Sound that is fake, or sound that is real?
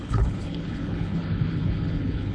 fake